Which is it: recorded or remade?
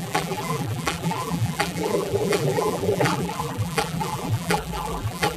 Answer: remade